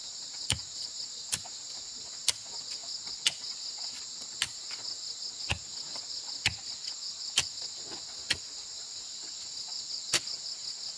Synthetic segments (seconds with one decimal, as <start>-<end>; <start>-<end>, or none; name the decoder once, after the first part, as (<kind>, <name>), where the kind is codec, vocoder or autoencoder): none